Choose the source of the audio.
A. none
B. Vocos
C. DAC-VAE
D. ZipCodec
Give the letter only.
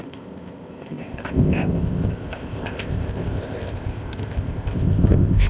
D